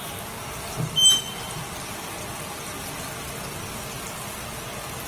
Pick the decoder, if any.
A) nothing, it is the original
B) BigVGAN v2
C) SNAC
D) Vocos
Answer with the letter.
A